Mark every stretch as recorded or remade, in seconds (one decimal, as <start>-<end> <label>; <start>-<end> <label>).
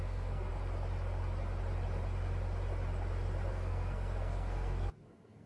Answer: 0.0-0.5 remade; 0.5-3.5 recorded; 3.5-5.5 remade